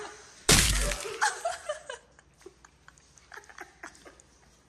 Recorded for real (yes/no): yes